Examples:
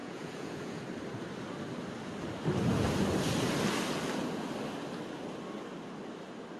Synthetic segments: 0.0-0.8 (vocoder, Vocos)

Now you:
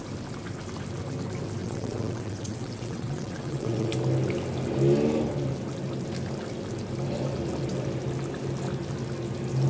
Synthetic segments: 1.6-3.9 (vocoder, WaveNeXt)

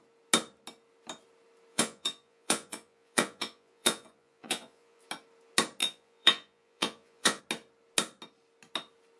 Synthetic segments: 1.7-5.0 (vocoder, Vocos); 5.8-7.4

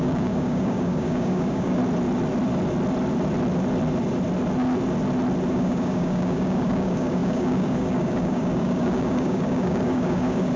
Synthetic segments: 0.0-1.8 (codec, DAC); 5.5-10.6

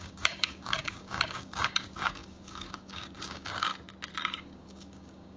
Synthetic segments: 0.0-3.7 (codec, DAC); 4.2-5.4